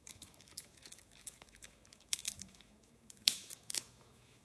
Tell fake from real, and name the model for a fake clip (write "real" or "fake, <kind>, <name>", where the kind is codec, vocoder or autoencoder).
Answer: fake, autoencoder, DAC-VAE